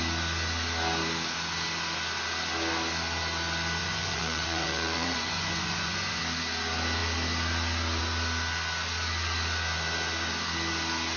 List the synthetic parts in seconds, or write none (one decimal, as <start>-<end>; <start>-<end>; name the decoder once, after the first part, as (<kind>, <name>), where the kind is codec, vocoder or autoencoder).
3.8-6.2 (vocoder, Vocos)